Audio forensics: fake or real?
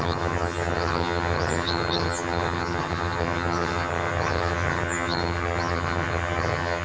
fake